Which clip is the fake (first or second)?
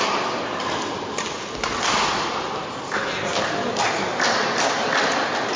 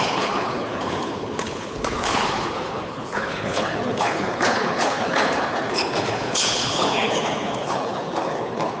second